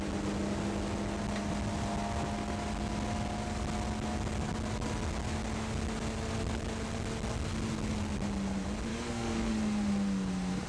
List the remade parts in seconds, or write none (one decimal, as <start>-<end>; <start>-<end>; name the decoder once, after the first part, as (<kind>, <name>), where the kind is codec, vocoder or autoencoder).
8.9-9.5 (codec, DAC)